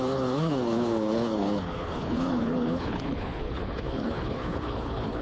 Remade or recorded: remade